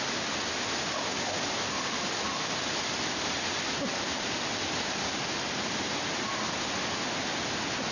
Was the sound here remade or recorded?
recorded